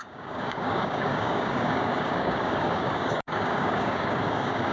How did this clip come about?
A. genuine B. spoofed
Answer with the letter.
B